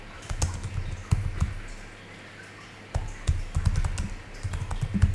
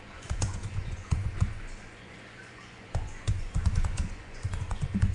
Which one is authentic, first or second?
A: first